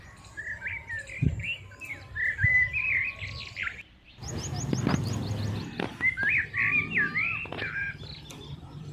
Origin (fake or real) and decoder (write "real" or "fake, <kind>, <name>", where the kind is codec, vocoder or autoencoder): real